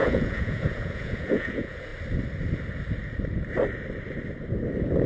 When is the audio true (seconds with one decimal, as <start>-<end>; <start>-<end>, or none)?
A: 1.9-5.1